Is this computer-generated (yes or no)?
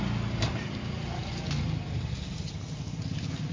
no